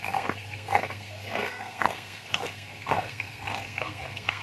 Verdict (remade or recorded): remade